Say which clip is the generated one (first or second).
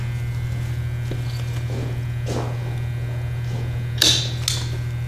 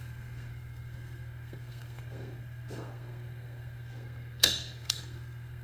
second